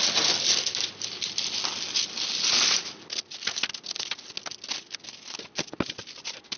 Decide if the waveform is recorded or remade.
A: recorded